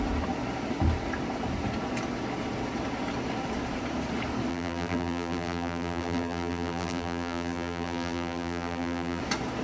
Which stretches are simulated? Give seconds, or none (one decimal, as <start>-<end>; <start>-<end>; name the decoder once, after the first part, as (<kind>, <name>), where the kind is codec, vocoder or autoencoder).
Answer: 4.5-9.2 (vocoder, BigVGAN v2)